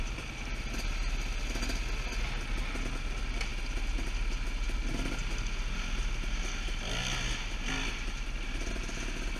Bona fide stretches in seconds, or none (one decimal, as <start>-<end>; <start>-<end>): 0.0-9.4